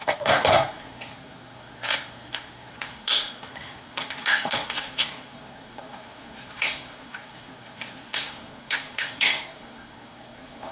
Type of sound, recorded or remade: remade